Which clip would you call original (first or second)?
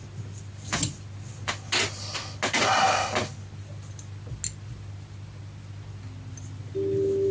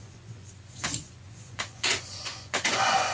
first